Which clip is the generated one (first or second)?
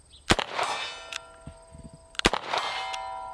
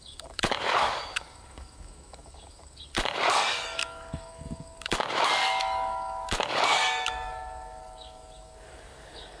second